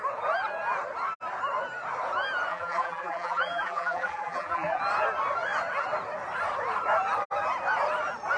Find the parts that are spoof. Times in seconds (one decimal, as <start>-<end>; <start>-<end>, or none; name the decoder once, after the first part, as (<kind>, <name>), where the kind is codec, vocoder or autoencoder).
2.5-4.8 (vocoder, BigVGAN v2)